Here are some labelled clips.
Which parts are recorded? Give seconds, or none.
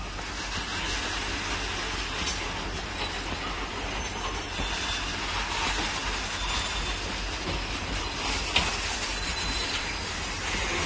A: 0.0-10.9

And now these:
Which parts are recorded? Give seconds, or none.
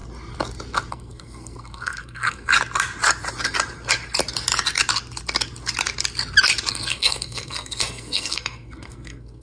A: 0.0-0.9; 2.5-6.7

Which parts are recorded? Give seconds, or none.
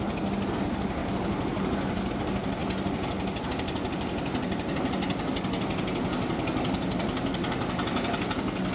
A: 0.0-1.0; 2.1-8.7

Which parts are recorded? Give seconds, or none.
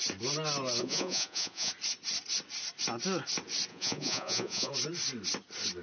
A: 0.0-0.8; 1.7-3.7; 4.7-5.8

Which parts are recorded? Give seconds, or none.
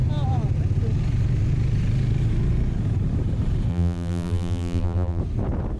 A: 0.0-3.7; 5.2-5.8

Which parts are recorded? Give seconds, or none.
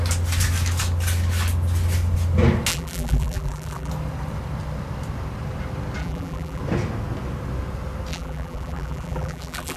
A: 0.0-2.7; 3.9-6.0; 6.6-8.1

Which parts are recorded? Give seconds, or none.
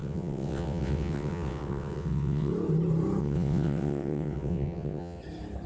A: 2.5-3.2; 5.2-5.7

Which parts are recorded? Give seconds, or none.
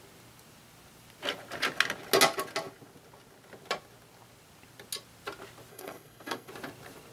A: 0.0-5.7; 6.5-7.1